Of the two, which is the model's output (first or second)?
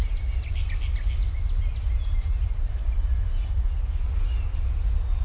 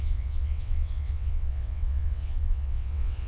second